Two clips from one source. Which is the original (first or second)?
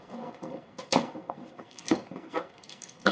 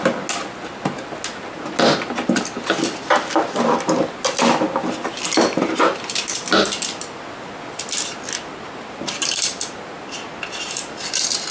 second